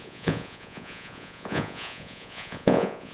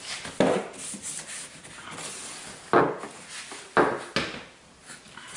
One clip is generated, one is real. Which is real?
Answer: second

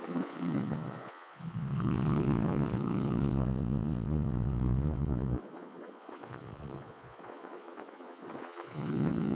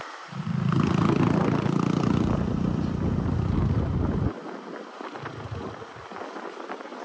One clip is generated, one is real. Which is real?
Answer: second